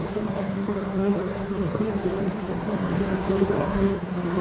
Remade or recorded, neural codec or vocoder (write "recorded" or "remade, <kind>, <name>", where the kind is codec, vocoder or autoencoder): remade, codec, SNAC